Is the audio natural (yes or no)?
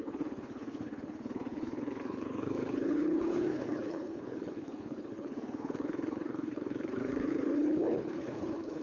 no